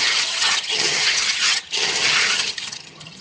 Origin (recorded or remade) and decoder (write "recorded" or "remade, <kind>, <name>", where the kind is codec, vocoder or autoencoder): remade, vocoder, HiFi-GAN